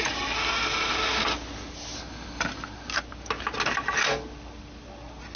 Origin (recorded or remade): recorded